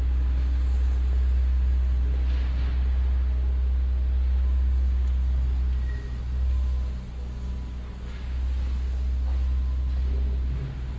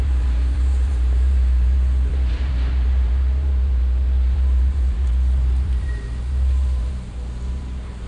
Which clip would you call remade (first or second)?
second